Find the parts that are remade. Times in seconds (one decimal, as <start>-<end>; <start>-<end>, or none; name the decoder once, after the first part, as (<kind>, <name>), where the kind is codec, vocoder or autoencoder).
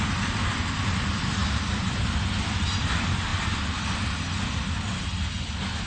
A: none